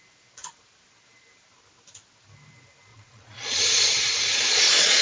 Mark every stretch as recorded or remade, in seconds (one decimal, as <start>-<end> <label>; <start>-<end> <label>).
0.0-2.9 recorded; 2.9-5.0 remade

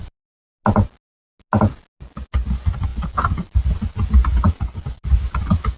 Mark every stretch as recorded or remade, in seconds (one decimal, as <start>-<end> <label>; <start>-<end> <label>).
0.0-5.8 recorded